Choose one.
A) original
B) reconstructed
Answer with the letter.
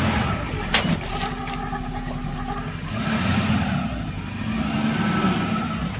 A